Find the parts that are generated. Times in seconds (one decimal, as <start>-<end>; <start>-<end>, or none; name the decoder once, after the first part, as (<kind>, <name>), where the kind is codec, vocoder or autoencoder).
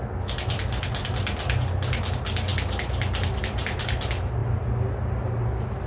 none